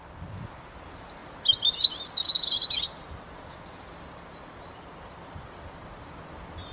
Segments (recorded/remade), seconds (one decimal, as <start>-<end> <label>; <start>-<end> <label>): 0.0-6.7 recorded